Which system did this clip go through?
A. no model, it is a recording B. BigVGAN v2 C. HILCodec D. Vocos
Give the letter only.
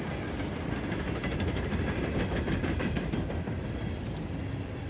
A